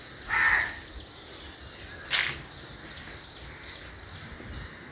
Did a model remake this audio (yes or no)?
no